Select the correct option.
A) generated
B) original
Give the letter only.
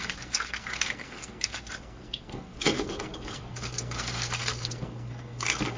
A